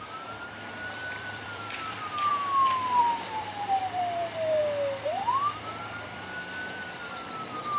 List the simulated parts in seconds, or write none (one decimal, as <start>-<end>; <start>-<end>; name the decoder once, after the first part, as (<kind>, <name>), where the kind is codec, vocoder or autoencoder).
0.0-2.3 (vocoder, BigVGAN v2); 3.0-4.6; 5.8-7.8

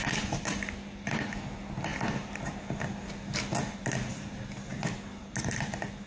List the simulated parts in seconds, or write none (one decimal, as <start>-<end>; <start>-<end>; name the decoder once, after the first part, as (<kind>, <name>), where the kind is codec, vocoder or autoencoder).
none

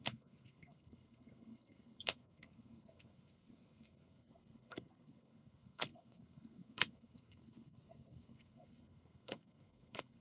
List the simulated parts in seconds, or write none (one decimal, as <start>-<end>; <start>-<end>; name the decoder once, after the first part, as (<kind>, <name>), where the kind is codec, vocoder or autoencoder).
0.0-10.2 (codec, SNAC)

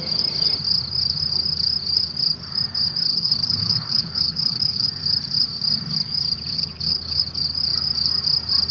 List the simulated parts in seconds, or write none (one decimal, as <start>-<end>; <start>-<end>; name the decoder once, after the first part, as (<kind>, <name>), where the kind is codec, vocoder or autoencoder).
3.1-4.9 (codec, HILCodec); 6.5-7.2

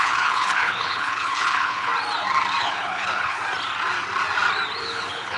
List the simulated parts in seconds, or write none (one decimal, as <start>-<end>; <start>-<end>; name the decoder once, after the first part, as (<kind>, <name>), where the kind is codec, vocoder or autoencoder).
0.0-1.9 (codec, HILCodec); 2.6-3.4; 4.8-5.4

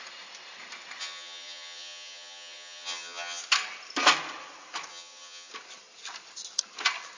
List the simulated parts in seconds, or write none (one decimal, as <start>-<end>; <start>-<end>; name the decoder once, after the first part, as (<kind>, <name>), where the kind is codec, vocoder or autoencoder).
1.0-3.4 (vocoder, HiFi-GAN); 4.9-5.5

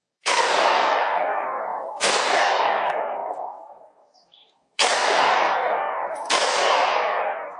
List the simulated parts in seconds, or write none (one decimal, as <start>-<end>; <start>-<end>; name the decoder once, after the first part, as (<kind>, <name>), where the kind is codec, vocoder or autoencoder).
0.0-7.6 (codec, DAC)